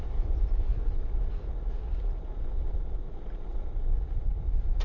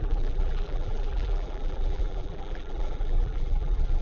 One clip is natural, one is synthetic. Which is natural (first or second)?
first